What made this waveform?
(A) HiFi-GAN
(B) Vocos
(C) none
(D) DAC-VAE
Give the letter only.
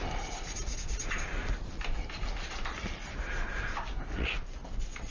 C